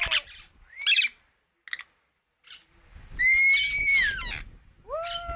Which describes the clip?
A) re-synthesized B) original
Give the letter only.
B